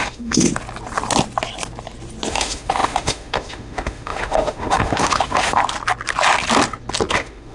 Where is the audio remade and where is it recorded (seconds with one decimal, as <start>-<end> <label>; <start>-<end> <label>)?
0.0-0.5 remade; 0.5-2.3 recorded; 2.3-5.6 remade; 5.6-7.1 recorded; 7.1-7.5 remade